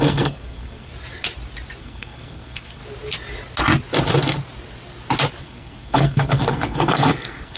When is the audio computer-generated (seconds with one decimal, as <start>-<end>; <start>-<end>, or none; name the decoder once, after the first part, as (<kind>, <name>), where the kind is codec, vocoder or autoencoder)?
0.0-0.9 (codec, SNAC); 1.8-2.8; 5.4-7.6